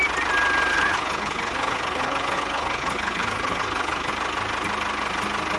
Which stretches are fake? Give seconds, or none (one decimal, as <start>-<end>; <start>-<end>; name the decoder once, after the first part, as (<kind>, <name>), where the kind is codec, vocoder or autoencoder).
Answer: 0.7-4.1 (codec, HILCodec)